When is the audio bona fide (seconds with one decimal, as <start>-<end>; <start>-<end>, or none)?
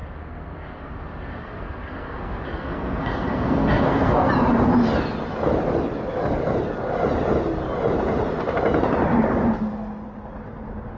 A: 4.3-11.0